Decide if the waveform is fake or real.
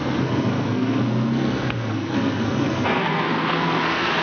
fake